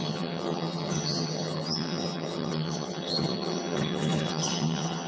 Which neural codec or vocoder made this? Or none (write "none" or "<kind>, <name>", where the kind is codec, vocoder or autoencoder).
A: vocoder, HiFi-GAN